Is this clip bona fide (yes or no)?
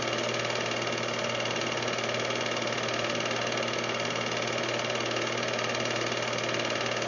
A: yes